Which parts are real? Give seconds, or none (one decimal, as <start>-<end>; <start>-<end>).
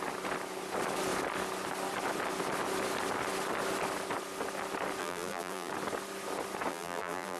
0.0-5.0; 5.7-6.7